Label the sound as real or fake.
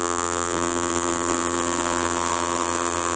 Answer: fake